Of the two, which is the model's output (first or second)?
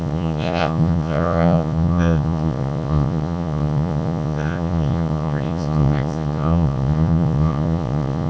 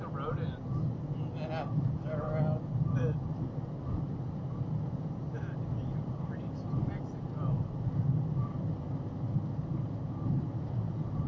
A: first